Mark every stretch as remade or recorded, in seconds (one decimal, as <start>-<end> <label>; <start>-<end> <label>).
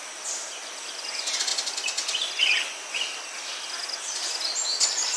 0.0-5.2 recorded